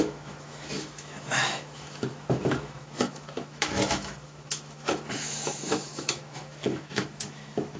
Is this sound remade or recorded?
remade